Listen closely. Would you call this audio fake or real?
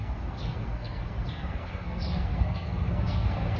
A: fake